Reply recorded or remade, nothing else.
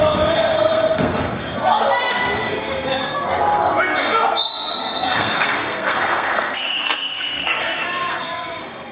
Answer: remade